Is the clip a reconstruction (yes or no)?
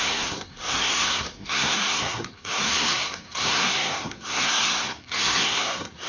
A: yes